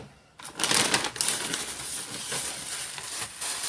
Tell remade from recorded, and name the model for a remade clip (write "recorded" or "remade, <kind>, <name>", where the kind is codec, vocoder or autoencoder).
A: recorded